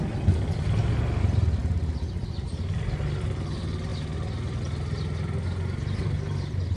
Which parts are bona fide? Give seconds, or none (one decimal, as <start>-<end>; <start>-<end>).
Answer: 0.0-6.8